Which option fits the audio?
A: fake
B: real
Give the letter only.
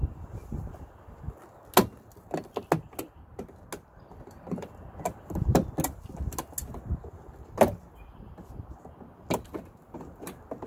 B